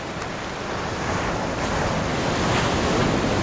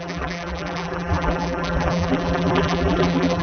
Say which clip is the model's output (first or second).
second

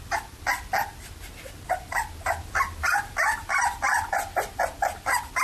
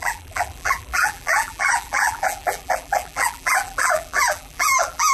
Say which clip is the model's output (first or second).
second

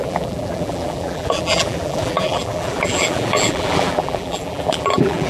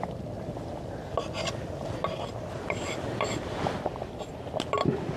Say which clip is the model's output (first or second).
first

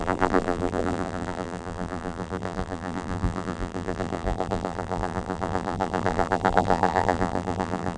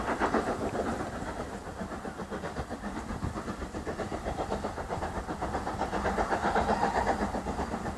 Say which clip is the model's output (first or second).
first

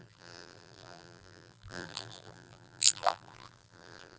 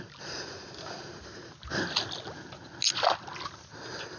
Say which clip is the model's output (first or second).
first